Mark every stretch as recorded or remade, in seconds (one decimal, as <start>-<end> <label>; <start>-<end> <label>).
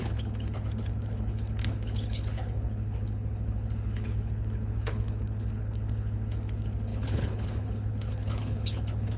0.0-9.2 remade